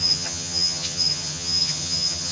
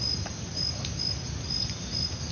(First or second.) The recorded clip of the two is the second